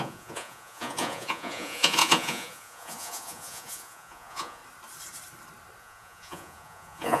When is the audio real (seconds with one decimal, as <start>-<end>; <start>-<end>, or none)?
4.6-5.8